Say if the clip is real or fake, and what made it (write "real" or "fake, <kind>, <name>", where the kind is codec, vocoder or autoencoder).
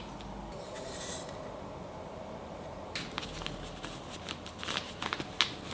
real